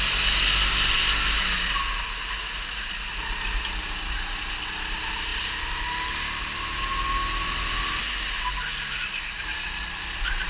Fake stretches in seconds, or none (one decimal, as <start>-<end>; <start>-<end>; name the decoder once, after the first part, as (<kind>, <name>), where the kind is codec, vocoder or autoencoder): none